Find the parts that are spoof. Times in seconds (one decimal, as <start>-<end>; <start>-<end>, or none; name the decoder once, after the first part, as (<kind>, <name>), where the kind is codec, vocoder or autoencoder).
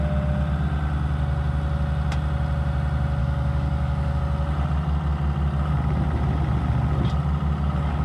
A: 3.2-4.2 (codec, DAC)